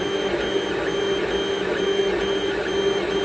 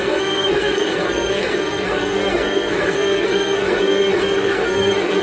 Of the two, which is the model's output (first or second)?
second